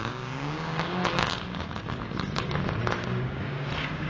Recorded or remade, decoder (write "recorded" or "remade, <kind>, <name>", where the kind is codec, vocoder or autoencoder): remade, codec, DAC